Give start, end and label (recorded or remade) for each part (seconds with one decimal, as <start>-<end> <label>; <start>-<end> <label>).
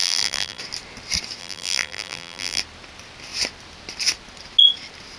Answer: 0.0-0.6 remade; 0.6-1.4 recorded; 1.4-2.6 remade; 2.6-5.2 recorded